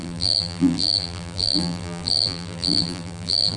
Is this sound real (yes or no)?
no